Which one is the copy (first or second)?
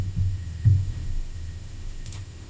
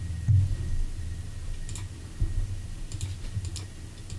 first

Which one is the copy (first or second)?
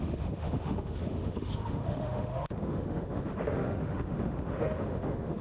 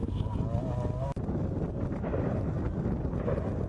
first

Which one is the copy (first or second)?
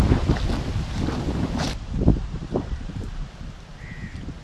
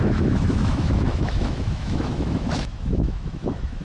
second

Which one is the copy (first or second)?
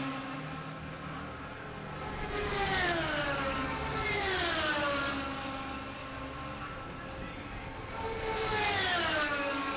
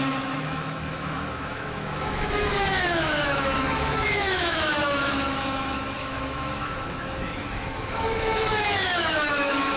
second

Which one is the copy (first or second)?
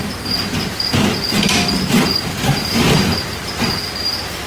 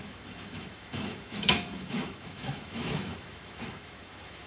second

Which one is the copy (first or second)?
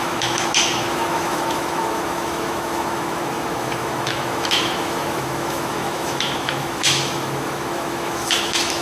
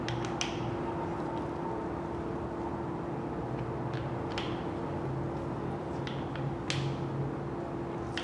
first